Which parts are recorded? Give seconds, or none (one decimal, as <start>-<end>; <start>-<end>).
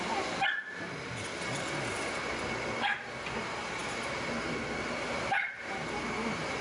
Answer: 0.0-6.6